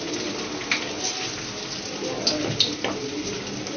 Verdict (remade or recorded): recorded